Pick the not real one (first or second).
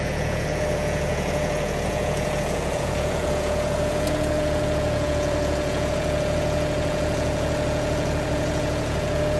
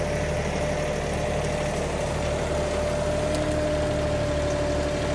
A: first